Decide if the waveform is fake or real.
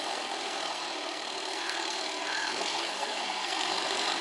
fake